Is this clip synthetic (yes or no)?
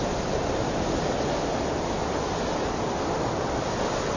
no